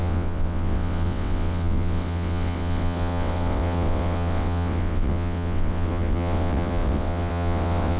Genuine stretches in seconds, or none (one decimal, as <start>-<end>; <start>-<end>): none